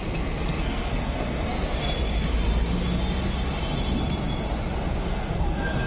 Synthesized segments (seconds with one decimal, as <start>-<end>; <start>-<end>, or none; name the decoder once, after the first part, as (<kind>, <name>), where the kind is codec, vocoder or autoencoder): 0.6-1.5 (codec, SNAC); 5.0-5.9